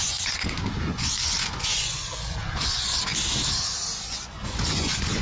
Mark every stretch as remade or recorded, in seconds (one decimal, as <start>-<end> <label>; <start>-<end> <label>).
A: 0.0-3.1 remade; 3.1-4.1 recorded; 4.1-5.2 remade